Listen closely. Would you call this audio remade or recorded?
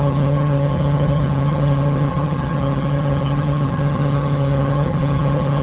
remade